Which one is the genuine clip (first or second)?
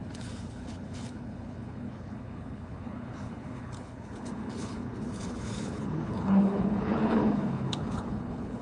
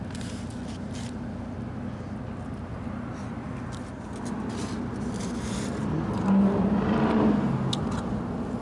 second